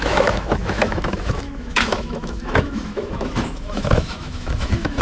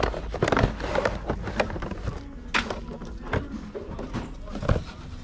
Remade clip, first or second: first